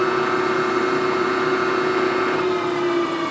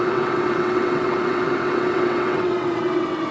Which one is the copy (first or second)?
second